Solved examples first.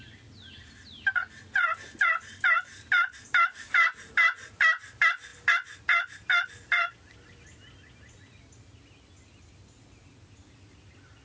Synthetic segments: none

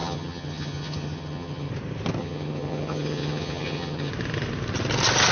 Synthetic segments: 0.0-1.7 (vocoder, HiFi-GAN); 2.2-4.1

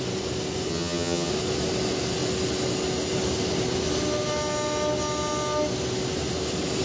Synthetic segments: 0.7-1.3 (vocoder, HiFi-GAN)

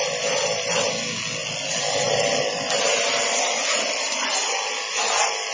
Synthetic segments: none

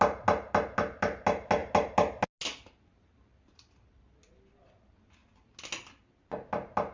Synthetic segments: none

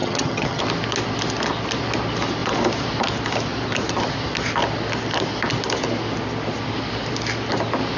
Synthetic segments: 0.0-0.6 (vocoder, HiFi-GAN)

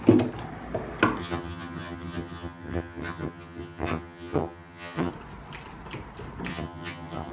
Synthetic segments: 1.2-5.1 (vocoder, HiFi-GAN); 6.5-7.3

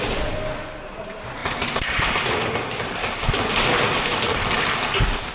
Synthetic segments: none